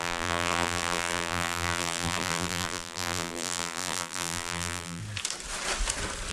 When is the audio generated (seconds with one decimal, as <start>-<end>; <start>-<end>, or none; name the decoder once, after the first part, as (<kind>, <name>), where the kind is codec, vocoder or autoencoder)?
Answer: 0.0-5.0 (vocoder, BigVGAN v2)